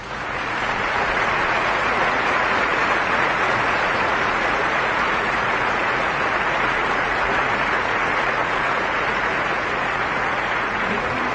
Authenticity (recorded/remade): remade